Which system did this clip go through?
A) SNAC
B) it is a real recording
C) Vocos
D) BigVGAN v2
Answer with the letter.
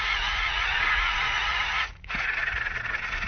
C